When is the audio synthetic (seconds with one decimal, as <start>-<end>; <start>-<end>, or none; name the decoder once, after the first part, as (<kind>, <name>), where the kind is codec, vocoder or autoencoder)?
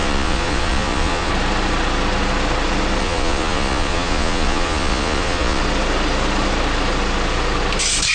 0.0-1.3 (vocoder, Vocos); 3.0-5.6